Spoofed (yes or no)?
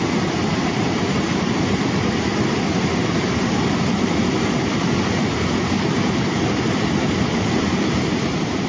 no